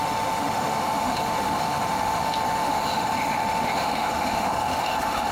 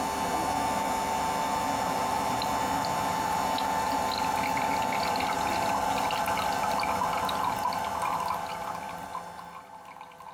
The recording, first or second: second